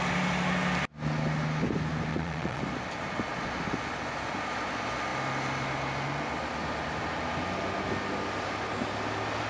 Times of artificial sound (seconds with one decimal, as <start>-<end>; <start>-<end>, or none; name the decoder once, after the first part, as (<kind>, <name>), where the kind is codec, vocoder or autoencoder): 2.1-2.6 (vocoder, Vocos)